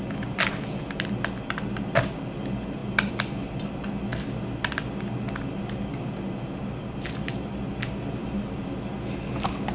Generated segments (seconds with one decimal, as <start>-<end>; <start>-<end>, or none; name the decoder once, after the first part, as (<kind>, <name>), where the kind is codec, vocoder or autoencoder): 2.8-3.6 (vocoder, BigVGAN v2); 8.2-8.8